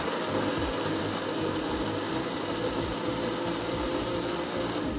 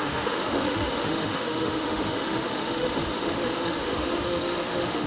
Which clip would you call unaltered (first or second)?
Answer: first